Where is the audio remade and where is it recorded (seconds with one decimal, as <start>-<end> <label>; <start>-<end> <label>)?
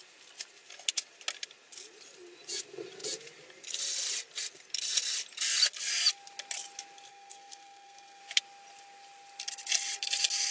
0.0-7.1 recorded; 7.1-8.2 remade; 8.2-10.5 recorded